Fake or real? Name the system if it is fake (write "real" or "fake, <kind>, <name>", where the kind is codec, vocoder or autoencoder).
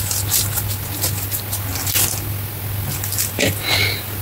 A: real